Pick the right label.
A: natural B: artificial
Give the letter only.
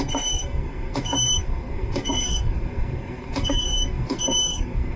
B